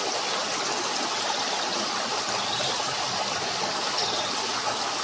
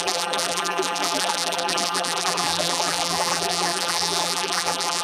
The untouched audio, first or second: first